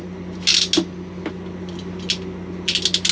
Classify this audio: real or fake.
real